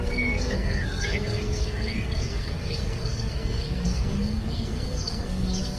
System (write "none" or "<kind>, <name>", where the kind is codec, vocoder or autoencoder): codec, SNAC